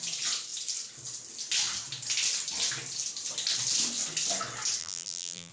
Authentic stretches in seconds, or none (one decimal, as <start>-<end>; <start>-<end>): 0.0-4.8